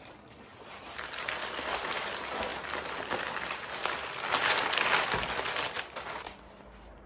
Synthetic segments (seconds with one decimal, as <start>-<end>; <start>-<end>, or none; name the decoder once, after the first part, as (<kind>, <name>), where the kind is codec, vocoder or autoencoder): none